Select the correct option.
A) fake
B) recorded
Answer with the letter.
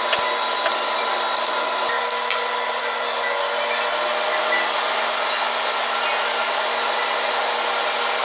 B